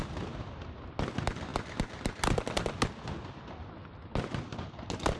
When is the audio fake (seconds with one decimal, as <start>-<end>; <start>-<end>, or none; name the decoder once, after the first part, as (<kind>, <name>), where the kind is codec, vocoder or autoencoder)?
none